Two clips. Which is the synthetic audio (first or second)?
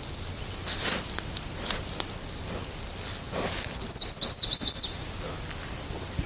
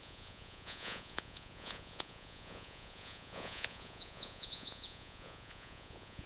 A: second